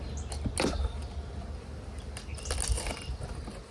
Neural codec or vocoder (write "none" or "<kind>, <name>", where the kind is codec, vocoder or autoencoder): none